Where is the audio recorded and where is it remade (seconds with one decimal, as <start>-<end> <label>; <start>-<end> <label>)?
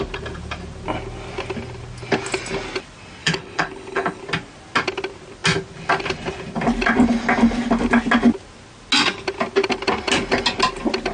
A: 0.0-3.2 recorded; 3.2-4.2 remade; 4.2-11.1 recorded